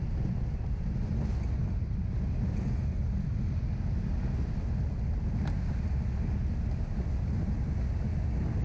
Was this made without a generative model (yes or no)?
yes